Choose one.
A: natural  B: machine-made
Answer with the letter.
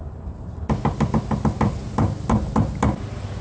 A